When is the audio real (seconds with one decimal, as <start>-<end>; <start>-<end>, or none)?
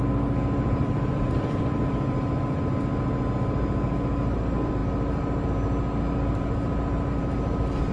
0.0-0.4; 2.6-7.9